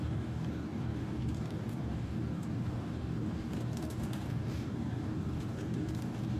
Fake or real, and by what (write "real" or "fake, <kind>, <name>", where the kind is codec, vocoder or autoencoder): fake, codec, DAC